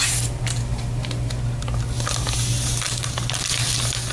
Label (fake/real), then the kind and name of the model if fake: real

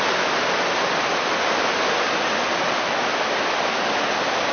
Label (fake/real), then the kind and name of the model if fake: real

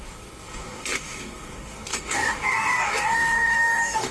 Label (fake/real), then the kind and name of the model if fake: fake, codec, DAC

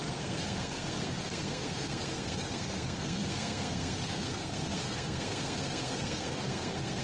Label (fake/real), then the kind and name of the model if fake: fake, codec, SNAC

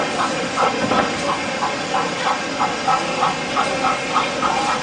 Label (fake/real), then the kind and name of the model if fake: real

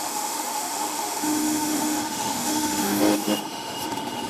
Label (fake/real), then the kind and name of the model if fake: fake, autoencoder, DAC-VAE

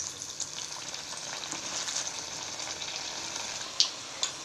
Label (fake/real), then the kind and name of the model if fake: real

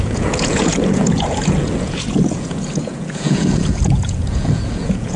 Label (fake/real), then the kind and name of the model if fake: fake, vocoder, Vocos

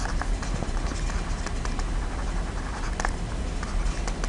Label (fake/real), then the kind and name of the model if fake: real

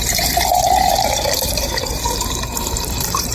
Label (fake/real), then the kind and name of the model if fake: fake, vocoder, BigVGAN v2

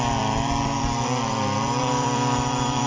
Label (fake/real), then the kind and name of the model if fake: fake, vocoder, BigVGAN v2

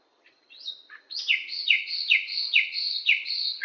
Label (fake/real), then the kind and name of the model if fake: fake, vocoder, Vocos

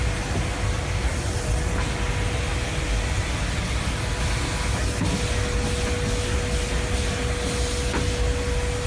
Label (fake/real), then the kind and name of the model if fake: real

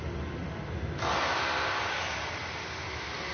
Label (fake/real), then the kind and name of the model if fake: real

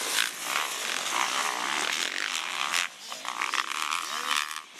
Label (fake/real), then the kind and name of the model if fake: real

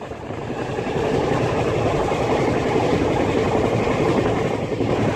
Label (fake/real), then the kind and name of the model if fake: real